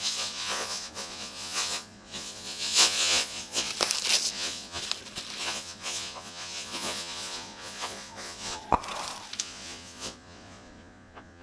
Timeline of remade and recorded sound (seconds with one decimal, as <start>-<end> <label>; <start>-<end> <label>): 0.0-3.7 remade; 3.7-4.3 recorded; 4.3-4.8 remade; 4.8-5.4 recorded; 5.4-8.6 remade; 8.6-9.4 recorded; 9.4-11.4 remade